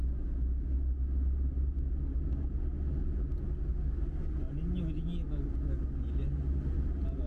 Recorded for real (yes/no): yes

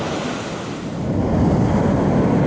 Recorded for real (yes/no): yes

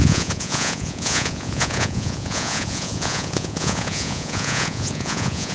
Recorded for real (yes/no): no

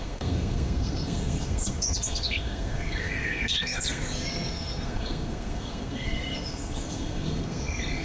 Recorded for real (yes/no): no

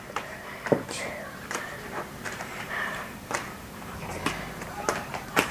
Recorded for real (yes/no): no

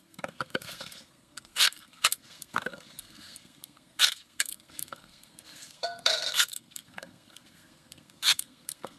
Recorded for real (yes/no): no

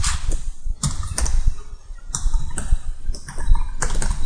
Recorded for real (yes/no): no